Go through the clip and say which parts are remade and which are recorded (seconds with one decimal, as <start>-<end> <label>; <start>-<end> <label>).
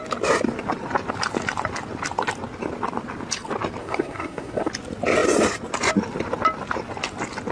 0.0-3.8 recorded; 3.8-4.7 remade; 4.7-7.5 recorded